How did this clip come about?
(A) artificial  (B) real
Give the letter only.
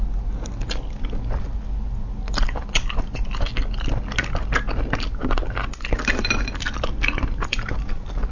B